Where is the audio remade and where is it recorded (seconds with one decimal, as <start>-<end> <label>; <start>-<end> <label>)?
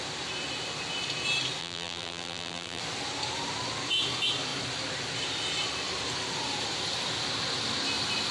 0.0-1.6 recorded; 1.6-2.8 remade; 2.8-8.3 recorded